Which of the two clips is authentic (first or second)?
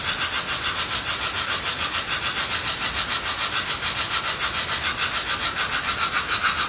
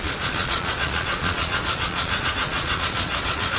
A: first